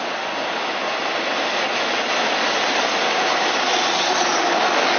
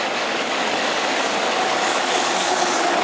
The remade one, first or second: second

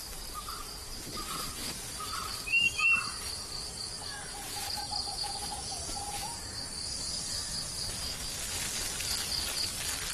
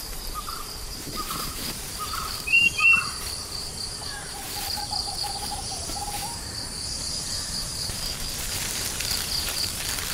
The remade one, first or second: second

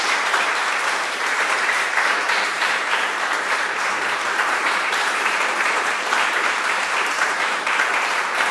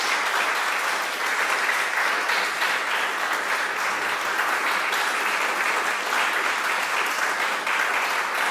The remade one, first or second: first